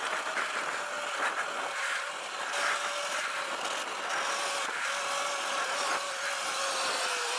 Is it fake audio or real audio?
real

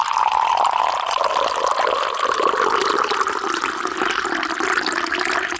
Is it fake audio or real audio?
real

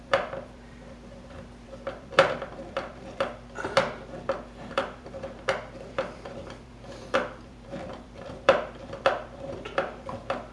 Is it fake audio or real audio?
fake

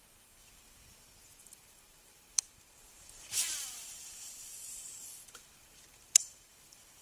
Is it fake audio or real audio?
fake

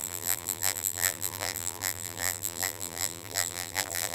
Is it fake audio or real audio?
fake